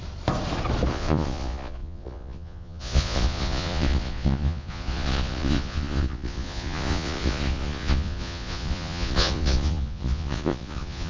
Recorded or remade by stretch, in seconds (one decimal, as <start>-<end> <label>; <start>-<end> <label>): 0.0-0.9 recorded; 0.9-11.1 remade